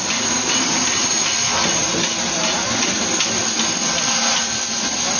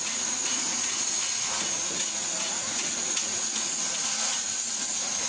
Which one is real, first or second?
first